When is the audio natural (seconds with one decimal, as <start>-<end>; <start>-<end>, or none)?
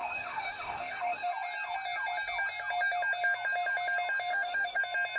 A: 1.3-4.3; 4.8-5.2